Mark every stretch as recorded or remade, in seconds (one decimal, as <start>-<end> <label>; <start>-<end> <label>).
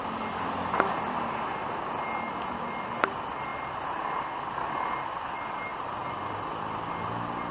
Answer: 0.0-5.7 recorded; 5.7-6.6 remade; 6.6-7.5 recorded